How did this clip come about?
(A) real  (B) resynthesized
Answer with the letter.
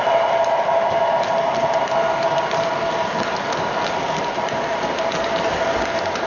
A